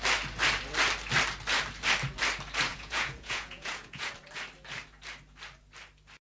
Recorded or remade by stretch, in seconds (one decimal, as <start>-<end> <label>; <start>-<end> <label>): 0.0-2.7 recorded; 2.7-4.1 remade; 4.1-6.2 recorded